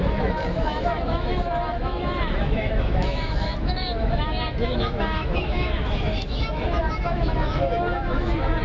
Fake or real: fake